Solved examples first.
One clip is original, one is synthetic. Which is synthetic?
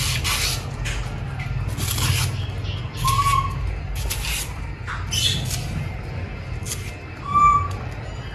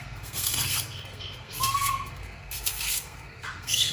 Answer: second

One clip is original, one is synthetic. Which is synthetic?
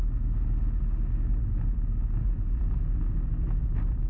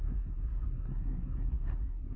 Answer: second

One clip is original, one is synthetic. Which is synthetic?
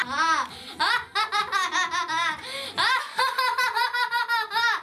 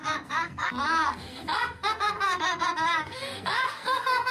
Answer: second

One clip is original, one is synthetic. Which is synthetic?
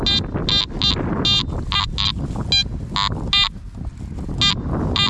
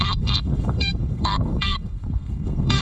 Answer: second